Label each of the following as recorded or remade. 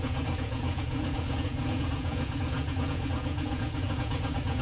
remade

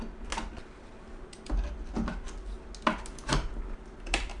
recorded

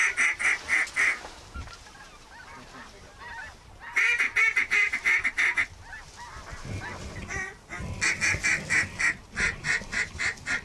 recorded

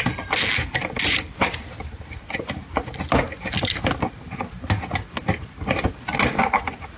recorded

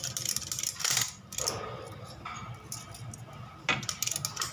recorded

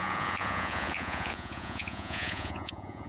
remade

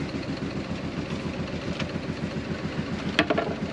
recorded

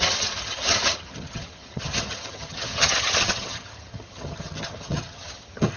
remade